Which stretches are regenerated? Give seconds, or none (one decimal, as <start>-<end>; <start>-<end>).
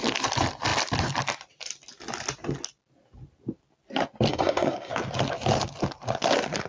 4.3-4.9